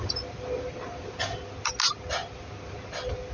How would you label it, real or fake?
real